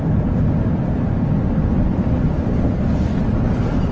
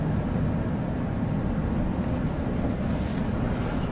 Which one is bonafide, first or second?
second